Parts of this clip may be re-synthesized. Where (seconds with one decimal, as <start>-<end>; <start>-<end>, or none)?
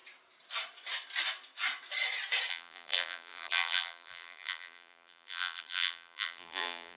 2.5-7.0